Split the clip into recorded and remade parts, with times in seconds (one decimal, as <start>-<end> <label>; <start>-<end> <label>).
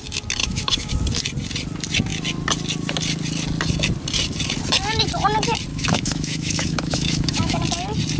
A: 0.0-0.4 recorded; 0.4-0.9 remade; 0.9-5.7 recorded; 5.7-7.6 remade; 7.6-8.2 recorded